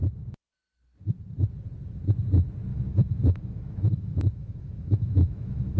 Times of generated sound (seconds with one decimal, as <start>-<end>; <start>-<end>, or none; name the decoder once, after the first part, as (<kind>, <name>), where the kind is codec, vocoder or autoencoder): 2.7-5.8 (autoencoder, DAC-VAE)